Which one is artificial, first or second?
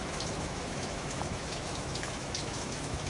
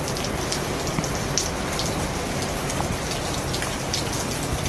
first